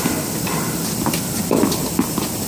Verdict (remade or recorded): recorded